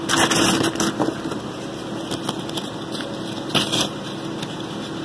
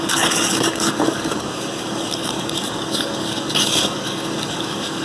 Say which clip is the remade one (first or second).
second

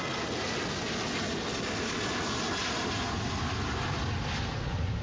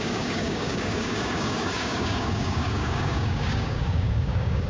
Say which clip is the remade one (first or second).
second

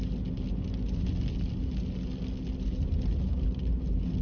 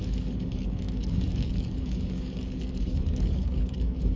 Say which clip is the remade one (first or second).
second